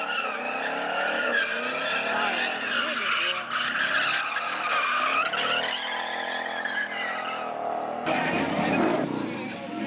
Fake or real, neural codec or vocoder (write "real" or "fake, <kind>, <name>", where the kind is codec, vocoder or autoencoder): real